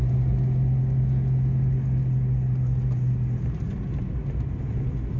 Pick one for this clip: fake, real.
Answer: real